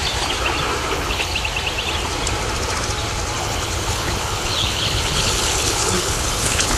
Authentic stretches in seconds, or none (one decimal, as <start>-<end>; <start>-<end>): 0.0-0.9; 1.3-3.4